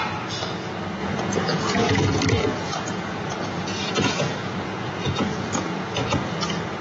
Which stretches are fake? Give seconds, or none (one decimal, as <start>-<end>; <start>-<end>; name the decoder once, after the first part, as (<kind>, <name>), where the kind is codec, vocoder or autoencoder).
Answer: 1.0-2.0 (vocoder, Vocos); 2.4-6.8

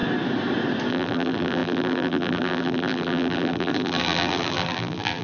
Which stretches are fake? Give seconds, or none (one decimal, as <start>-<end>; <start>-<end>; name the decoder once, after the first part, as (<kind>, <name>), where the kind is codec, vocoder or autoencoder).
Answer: 0.9-5.2 (vocoder, BigVGAN v2)

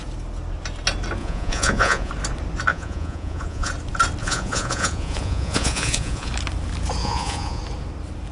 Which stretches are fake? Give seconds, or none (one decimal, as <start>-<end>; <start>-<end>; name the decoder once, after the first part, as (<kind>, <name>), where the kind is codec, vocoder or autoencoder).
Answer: 1.2-2.1 (vocoder, Vocos); 2.7-3.7; 4.2-6.3; 7.0-7.6

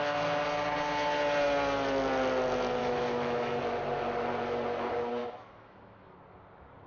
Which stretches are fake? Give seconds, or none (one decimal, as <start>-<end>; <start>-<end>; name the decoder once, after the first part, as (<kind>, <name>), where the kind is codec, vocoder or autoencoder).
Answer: 2.8-3.6 (autoencoder, DAC-VAE); 5.2-6.1

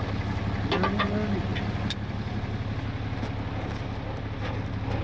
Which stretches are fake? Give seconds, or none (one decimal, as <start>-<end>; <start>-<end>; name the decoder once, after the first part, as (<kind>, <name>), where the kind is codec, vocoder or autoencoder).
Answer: none

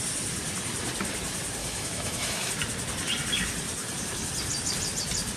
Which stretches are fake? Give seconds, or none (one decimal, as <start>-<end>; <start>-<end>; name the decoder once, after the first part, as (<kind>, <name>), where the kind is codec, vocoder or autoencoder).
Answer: 1.6-2.5 (autoencoder, DAC-VAE)

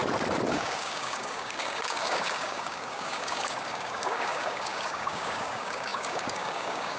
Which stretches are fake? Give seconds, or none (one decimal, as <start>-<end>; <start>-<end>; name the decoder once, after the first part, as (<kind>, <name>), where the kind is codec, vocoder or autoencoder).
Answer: 0.5-7.0 (codec, DAC)